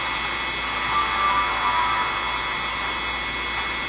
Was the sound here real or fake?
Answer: real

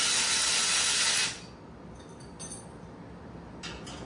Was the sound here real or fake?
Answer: real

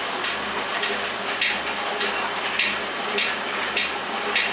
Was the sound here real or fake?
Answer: real